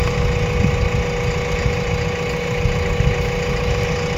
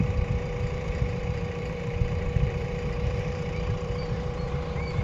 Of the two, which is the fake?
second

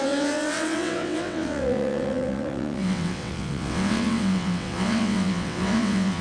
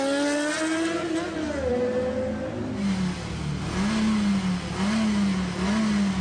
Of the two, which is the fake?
first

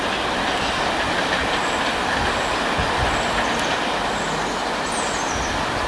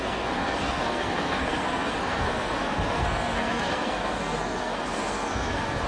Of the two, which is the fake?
second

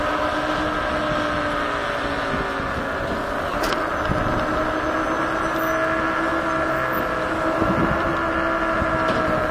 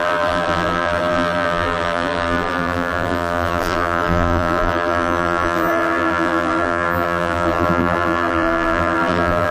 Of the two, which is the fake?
second